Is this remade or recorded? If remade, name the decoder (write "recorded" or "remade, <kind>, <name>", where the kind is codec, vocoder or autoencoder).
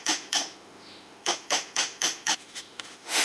remade, autoencoder, DAC-VAE